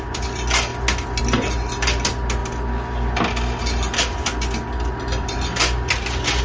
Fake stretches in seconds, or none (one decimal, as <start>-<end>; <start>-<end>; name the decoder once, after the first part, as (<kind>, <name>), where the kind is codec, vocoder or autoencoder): none